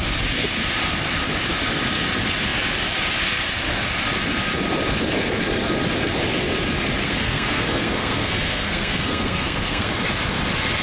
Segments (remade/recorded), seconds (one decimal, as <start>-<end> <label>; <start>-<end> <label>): 0.0-7.0 recorded; 7.0-10.0 remade; 10.0-10.8 recorded